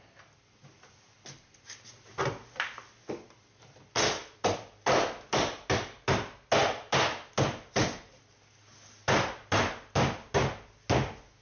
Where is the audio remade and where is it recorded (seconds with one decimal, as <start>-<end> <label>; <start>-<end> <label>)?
0.0-11.4 recorded